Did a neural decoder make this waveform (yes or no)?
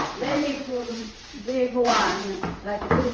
yes